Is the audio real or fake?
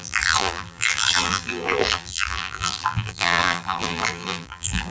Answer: fake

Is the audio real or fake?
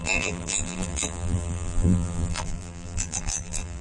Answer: fake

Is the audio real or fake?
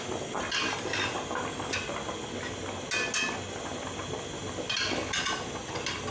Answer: real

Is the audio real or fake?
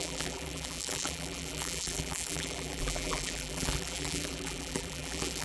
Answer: fake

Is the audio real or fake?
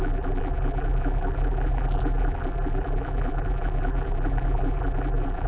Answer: fake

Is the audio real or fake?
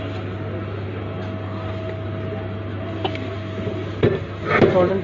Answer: real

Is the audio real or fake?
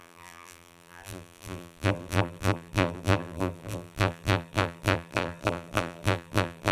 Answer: fake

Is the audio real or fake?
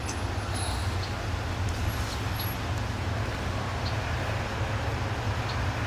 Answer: real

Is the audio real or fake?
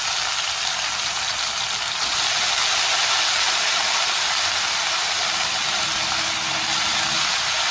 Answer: real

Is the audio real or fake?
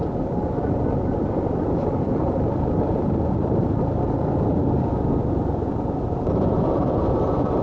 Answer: fake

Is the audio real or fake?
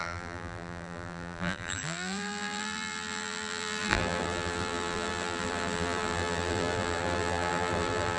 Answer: fake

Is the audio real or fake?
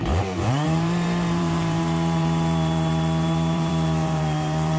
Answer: fake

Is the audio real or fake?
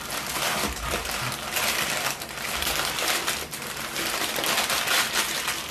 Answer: fake